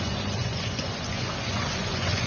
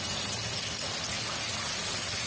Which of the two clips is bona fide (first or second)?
second